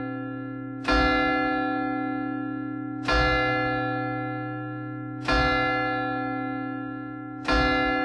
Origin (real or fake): real